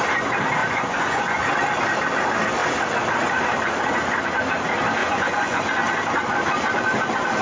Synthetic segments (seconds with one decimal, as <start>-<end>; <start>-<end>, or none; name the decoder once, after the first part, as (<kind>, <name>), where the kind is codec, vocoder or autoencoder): 0.6-1.4 (vocoder, Vocos); 5.0-5.6